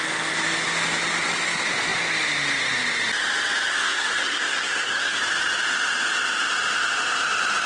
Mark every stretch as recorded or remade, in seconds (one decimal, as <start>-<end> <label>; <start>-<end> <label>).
0.0-3.7 recorded; 3.7-5.2 remade; 5.2-7.7 recorded